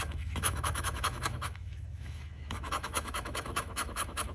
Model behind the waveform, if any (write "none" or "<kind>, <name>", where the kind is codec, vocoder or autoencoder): autoencoder, DAC-VAE